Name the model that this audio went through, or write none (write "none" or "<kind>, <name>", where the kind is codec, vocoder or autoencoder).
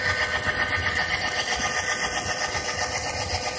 none